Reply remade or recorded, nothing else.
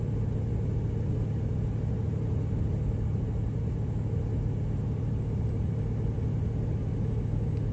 recorded